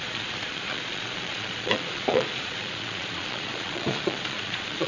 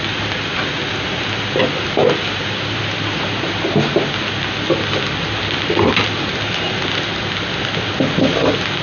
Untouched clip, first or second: second